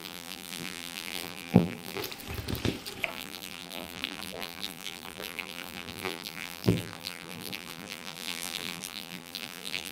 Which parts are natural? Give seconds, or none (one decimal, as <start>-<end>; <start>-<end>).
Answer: 2.0-3.1